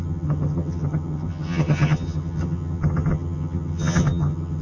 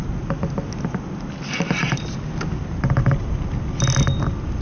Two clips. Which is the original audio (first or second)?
second